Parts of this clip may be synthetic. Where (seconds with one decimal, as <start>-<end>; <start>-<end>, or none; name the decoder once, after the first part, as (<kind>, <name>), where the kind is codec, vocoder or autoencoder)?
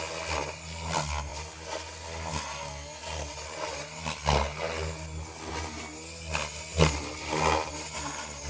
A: none